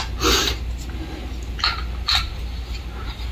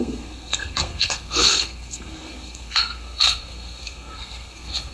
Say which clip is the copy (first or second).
second